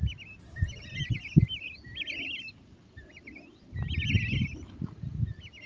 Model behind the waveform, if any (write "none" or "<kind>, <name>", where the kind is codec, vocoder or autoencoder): none